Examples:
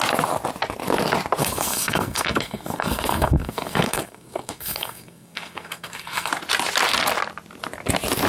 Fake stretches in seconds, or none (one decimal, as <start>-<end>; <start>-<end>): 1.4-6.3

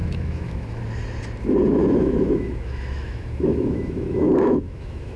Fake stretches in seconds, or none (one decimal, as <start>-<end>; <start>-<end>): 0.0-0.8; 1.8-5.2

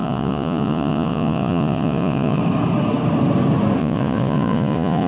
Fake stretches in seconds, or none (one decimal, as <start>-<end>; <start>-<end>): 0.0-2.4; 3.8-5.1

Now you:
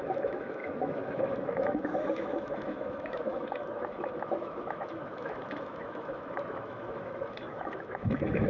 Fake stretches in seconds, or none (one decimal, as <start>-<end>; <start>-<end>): 0.0-8.5